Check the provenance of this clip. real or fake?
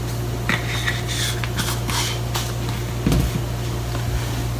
real